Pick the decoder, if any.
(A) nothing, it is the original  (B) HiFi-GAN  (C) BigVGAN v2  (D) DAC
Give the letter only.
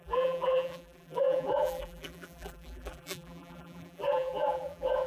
C